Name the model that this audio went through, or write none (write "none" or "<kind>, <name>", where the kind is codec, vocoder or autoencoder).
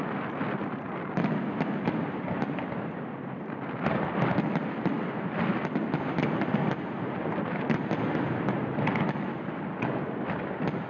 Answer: none